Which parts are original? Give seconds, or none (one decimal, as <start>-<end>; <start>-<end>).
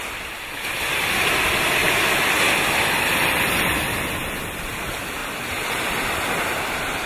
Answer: 0.0-5.2; 5.9-7.1